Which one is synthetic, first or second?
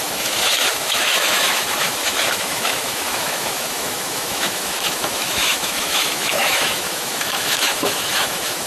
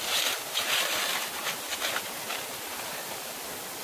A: first